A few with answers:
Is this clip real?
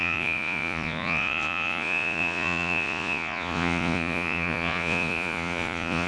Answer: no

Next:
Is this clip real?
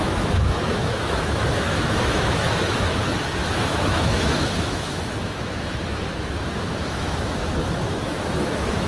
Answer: no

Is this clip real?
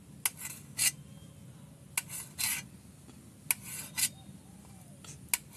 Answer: yes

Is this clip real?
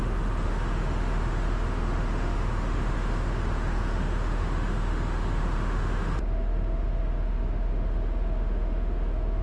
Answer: no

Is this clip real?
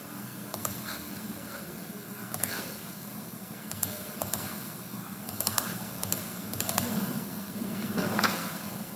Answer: no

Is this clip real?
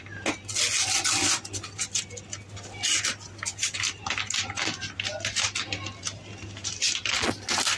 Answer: yes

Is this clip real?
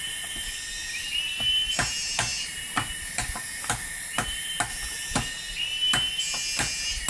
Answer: yes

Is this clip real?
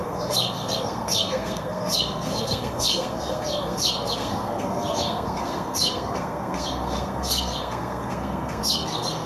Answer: no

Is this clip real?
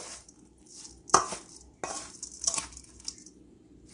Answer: yes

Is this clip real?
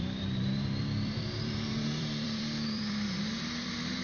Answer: no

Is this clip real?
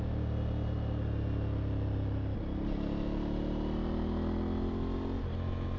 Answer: yes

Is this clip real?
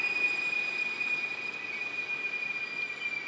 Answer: yes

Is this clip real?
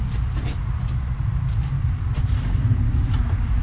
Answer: yes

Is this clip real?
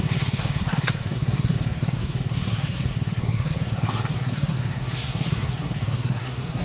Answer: no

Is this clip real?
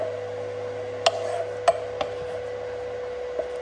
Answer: yes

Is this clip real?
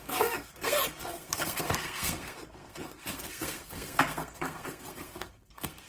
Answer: no